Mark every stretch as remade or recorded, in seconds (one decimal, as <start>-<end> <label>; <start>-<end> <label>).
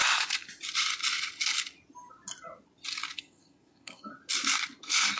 0.0-3.1 recorded; 3.1-4.1 remade; 4.1-4.8 recorded; 4.8-5.2 remade